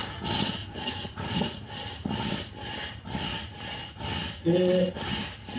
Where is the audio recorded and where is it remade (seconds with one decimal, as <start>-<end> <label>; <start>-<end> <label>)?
0.0-0.6 recorded; 0.6-1.7 remade; 1.7-5.6 recorded